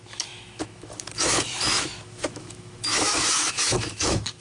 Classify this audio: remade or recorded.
remade